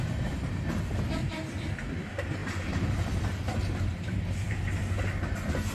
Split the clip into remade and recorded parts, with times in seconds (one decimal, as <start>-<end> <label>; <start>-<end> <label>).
0.0-2.4 recorded; 2.4-3.4 remade; 3.4-3.9 recorded; 3.9-4.6 remade; 4.6-5.7 recorded